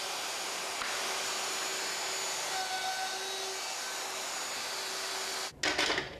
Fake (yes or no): no